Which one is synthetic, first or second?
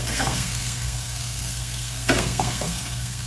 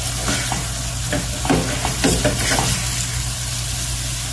first